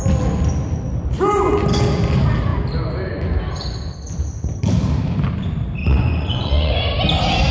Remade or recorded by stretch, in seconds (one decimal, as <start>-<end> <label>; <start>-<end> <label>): 0.0-5.8 recorded; 5.8-6.7 remade; 6.7-7.5 recorded